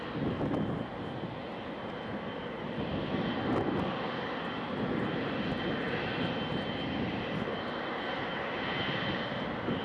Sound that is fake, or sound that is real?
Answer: real